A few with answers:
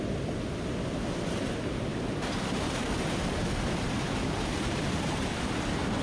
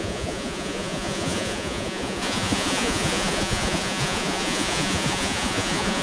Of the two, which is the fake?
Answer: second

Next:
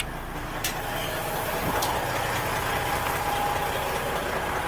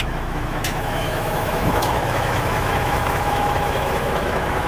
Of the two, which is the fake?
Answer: second